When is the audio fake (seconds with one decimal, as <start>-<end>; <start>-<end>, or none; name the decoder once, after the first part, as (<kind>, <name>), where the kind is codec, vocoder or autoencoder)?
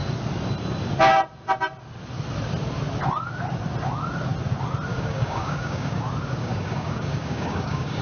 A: 4.9-6.0 (codec, DAC); 6.4-8.0